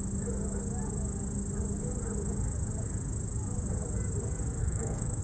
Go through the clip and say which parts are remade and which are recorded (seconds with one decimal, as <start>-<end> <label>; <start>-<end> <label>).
0.0-4.6 recorded; 4.6-5.2 remade